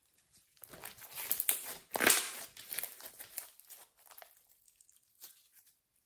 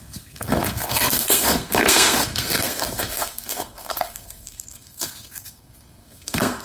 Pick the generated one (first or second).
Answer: second